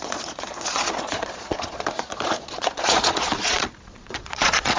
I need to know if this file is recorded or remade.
remade